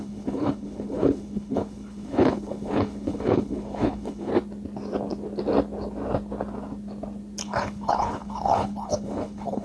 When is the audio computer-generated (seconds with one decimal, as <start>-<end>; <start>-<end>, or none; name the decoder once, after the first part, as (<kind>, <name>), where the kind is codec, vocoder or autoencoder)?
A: 0.0-4.3 (codec, HILCodec); 7.4-9.6